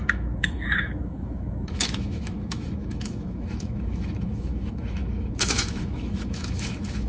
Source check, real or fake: fake